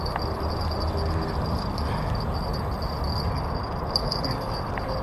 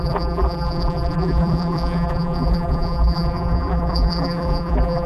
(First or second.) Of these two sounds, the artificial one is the second